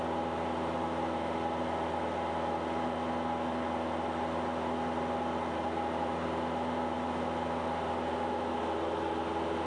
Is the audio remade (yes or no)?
no